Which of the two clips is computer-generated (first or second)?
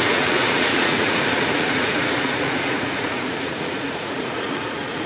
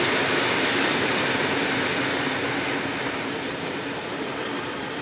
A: first